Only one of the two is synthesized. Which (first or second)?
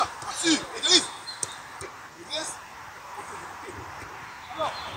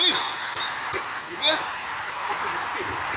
first